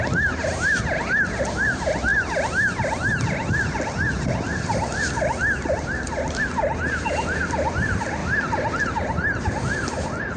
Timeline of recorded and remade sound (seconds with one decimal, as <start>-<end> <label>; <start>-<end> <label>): 0.0-2.1 remade; 2.1-6.4 recorded; 6.4-8.2 remade; 8.2-8.8 recorded; 8.8-10.4 remade